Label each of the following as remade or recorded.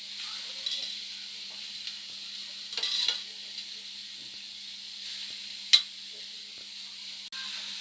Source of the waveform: recorded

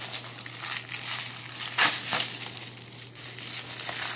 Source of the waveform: recorded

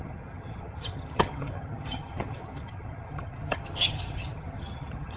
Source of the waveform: remade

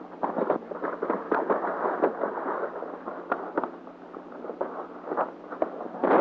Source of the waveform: recorded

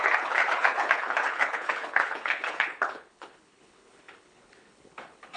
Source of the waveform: remade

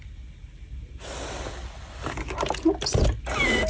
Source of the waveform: recorded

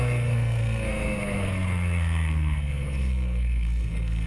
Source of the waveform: remade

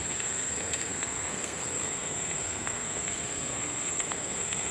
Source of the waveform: remade